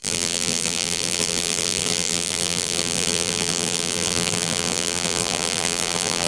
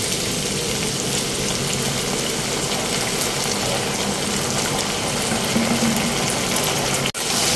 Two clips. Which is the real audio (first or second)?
second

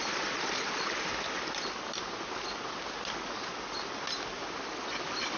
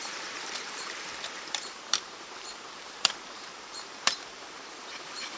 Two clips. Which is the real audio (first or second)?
first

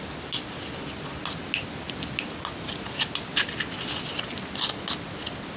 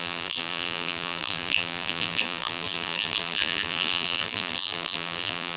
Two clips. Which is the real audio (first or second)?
first